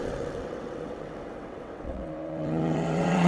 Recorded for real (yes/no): no